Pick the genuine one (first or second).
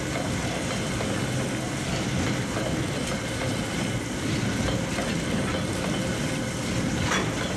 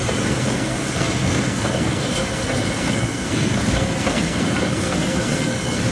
first